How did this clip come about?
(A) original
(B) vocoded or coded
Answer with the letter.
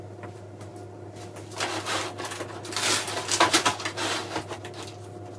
A